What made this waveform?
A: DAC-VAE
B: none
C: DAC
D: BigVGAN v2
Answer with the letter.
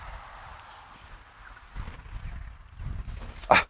B